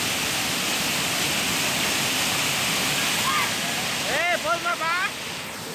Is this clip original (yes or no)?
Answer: yes